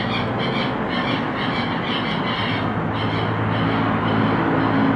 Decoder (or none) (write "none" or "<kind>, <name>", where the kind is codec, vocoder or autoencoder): none